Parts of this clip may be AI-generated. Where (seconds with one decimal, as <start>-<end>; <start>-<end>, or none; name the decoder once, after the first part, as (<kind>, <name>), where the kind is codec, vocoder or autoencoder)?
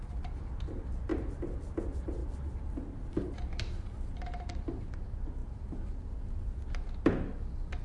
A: none